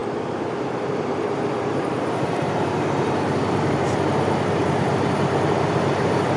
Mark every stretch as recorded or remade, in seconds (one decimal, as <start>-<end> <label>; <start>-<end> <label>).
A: 0.0-6.4 remade

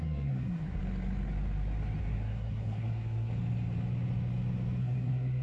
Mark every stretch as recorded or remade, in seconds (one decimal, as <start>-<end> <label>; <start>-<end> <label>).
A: 0.0-0.8 remade; 0.8-2.0 recorded; 2.0-3.3 remade; 3.3-4.8 recorded; 4.8-5.4 remade

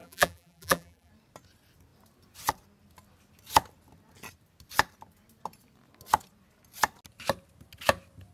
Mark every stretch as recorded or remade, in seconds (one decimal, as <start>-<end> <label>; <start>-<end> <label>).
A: 0.0-1.1 remade; 1.1-8.3 recorded

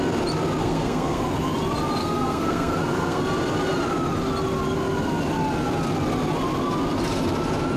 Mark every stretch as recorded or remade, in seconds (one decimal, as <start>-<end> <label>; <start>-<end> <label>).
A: 0.0-0.6 recorded; 0.6-1.2 remade; 1.2-2.0 recorded; 2.0-3.2 remade; 3.2-7.8 recorded